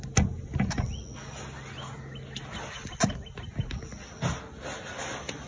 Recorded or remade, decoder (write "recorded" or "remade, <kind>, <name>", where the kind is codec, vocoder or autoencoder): recorded